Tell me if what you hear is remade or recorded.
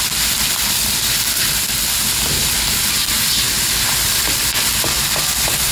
remade